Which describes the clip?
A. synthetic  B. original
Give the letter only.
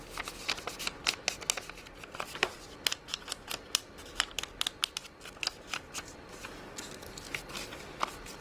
B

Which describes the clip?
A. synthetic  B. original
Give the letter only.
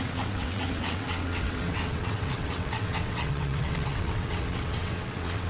A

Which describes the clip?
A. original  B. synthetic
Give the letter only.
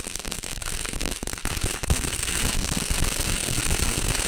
B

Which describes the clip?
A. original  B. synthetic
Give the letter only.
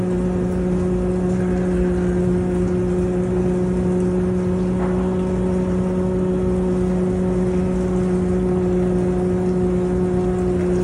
A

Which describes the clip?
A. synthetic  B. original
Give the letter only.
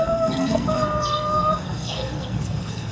A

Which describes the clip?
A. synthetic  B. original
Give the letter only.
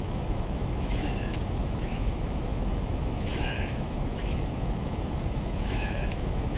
A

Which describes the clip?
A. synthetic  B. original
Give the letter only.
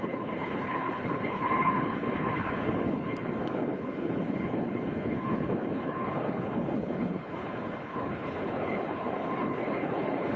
A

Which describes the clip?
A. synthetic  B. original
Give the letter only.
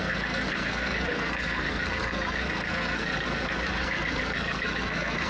A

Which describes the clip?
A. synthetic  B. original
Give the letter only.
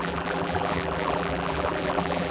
A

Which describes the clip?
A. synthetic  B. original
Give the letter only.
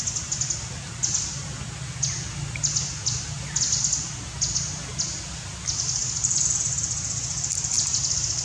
B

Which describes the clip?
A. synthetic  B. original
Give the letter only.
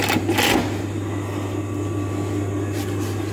B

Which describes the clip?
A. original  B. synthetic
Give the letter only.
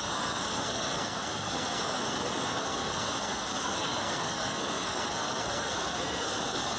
B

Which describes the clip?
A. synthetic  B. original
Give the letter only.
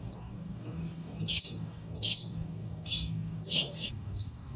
A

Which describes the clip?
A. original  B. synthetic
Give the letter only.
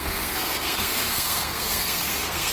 B